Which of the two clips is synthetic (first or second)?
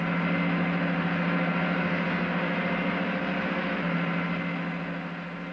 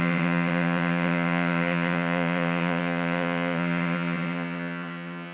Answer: second